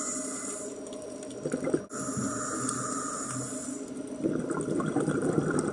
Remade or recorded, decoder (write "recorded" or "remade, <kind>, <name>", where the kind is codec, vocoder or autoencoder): recorded